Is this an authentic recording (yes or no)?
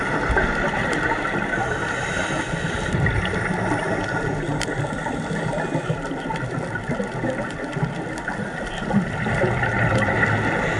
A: yes